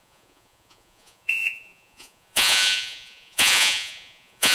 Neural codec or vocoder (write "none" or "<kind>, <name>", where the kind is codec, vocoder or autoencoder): vocoder, Vocos